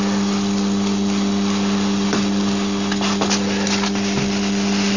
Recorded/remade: recorded